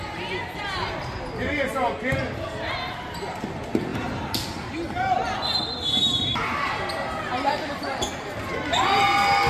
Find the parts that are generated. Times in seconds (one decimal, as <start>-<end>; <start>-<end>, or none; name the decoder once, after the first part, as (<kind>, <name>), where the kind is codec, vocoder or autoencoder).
none